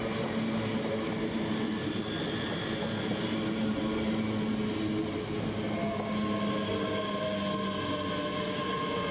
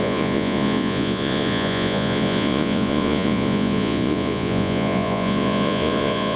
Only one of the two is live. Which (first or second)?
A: first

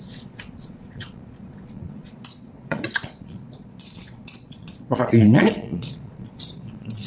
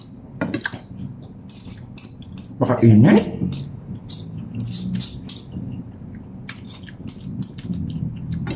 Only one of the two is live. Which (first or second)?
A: second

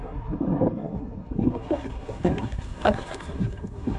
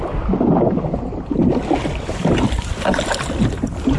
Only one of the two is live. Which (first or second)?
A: second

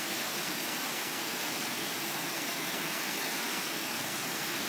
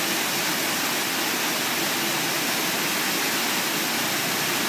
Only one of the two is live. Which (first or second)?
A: second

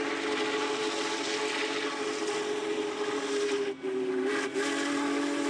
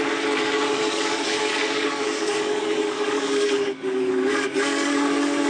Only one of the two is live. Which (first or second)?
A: first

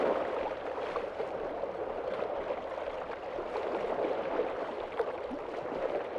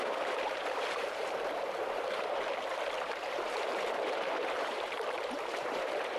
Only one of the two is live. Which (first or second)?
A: first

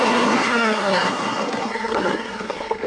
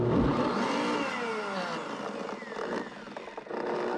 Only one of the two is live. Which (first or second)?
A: second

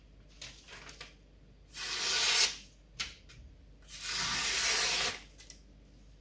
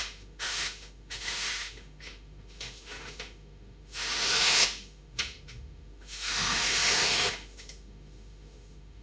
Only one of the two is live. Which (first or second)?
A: first